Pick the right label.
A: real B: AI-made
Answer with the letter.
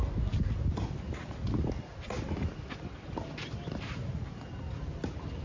A